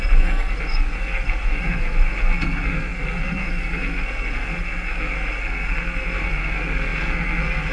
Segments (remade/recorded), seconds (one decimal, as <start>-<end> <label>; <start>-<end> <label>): 0.0-7.7 remade